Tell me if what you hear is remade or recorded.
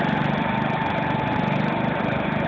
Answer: recorded